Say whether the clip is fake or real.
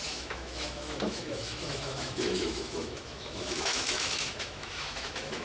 fake